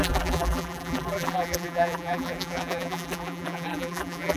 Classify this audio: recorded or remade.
remade